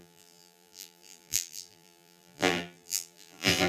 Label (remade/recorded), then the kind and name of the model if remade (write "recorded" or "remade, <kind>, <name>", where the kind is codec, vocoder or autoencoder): remade, vocoder, BigVGAN v2